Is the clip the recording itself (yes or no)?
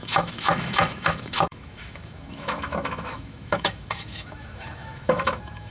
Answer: no